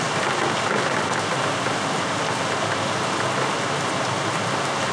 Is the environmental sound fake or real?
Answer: real